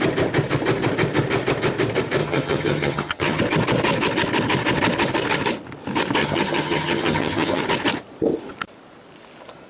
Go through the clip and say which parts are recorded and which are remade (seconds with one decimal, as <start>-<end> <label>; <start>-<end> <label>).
0.0-2.2 recorded; 2.2-3.4 remade; 3.4-6.2 recorded; 6.2-7.6 remade; 7.6-9.7 recorded